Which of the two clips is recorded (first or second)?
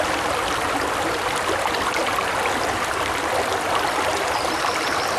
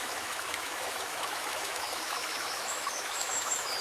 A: first